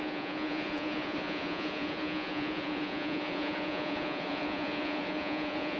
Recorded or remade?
remade